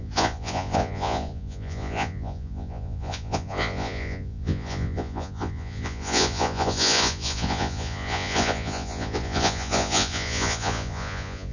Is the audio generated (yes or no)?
yes